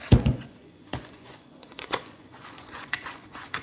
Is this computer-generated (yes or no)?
yes